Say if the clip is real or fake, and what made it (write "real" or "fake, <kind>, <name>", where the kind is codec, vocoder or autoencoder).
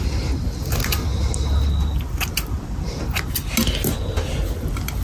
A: real